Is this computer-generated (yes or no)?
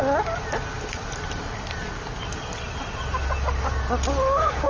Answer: no